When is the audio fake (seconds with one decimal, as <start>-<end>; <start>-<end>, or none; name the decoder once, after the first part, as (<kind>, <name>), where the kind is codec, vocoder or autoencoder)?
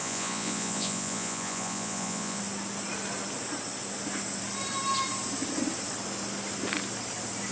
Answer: 0.0-2.4 (vocoder, Vocos)